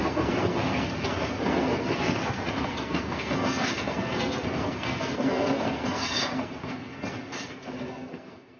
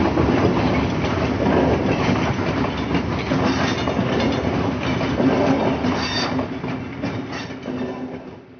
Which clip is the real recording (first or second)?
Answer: second